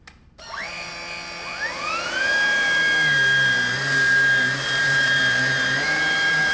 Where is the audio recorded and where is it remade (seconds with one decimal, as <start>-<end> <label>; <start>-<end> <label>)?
0.0-0.9 remade; 0.9-4.8 recorded; 4.8-6.5 remade